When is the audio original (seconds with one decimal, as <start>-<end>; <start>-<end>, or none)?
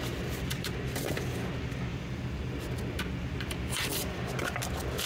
0.0-1.9; 2.5-3.9; 4.6-5.1